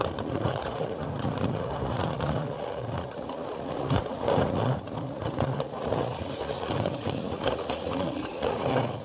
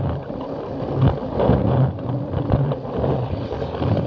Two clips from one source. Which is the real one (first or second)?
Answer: second